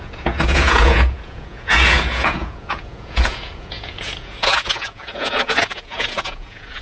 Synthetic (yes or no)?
yes